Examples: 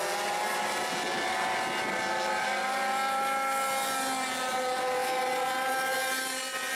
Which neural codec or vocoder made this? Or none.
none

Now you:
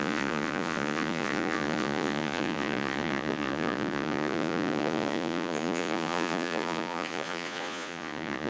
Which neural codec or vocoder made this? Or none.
vocoder, Vocos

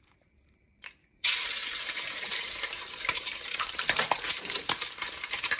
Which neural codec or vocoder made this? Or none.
vocoder, BigVGAN v2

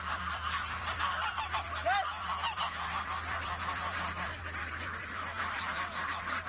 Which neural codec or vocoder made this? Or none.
vocoder, BigVGAN v2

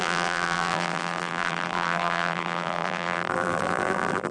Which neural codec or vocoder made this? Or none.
vocoder, BigVGAN v2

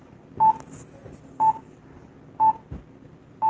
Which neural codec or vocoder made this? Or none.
none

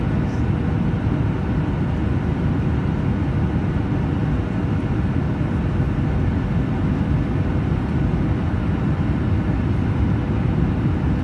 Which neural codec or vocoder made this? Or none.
none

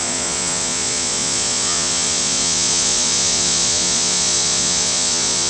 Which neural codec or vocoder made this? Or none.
vocoder, Vocos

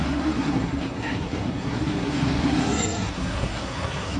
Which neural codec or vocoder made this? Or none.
codec, SNAC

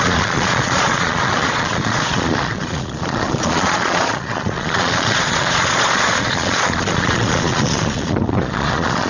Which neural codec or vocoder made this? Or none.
vocoder, Vocos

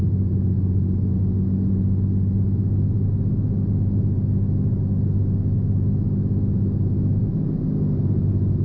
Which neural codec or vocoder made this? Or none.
none